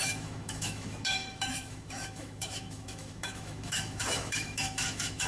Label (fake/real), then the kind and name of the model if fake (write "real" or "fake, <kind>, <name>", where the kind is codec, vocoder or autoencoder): fake, autoencoder, DAC-VAE